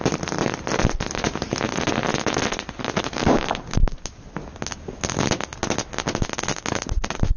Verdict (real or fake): real